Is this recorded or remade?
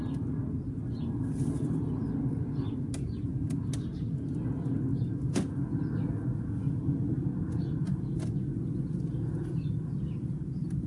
recorded